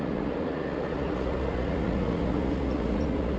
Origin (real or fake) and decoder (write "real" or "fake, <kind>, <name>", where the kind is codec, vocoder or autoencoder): fake, vocoder, Vocos